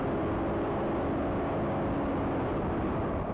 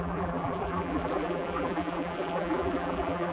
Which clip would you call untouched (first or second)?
first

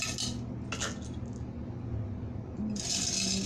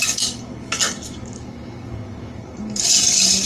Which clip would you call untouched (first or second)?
first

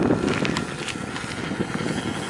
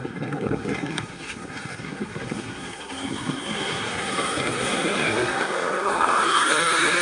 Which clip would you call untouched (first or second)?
first